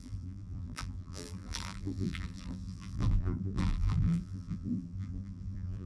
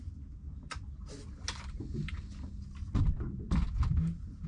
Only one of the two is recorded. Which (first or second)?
second